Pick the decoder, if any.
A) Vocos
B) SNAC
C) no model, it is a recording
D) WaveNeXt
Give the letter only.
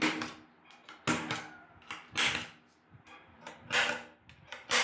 C